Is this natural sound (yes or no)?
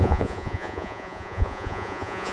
no